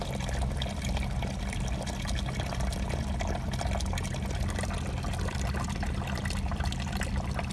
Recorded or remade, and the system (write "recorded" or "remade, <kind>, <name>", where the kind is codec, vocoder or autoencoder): recorded